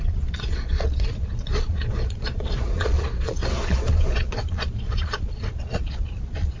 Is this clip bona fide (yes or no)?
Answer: no